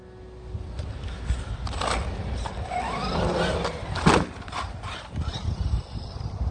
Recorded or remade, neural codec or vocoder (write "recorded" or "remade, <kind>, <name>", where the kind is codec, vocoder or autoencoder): recorded